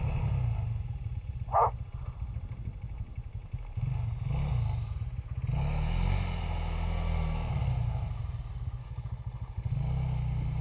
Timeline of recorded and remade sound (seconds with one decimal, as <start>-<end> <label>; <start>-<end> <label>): 0.0-8.8 recorded; 8.8-9.7 remade; 9.7-10.6 recorded

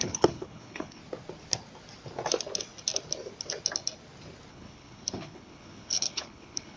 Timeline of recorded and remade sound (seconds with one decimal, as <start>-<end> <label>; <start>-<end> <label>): 0.0-1.0 remade; 1.0-4.5 recorded; 4.5-6.8 remade

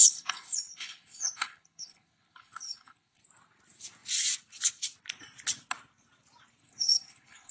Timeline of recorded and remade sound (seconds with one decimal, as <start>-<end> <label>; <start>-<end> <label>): 0.0-3.2 remade; 3.2-6.6 recorded; 6.6-7.5 remade